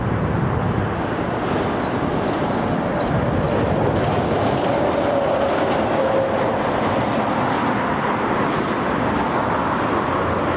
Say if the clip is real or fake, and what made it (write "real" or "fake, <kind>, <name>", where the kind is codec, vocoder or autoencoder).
real